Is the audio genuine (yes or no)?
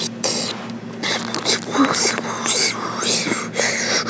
yes